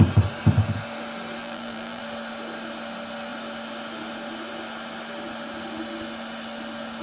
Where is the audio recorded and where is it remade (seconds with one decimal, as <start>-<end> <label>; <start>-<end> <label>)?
0.0-1.4 recorded; 1.4-2.0 remade; 2.0-7.0 recorded